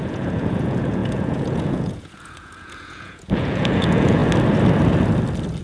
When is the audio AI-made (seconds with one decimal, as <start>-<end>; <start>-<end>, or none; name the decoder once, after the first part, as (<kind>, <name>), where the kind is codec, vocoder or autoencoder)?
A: 0.0-4.2 (vocoder, Vocos)